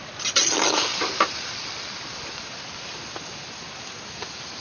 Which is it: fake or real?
real